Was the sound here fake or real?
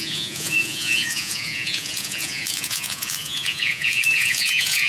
fake